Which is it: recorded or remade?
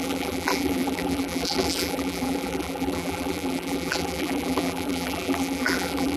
remade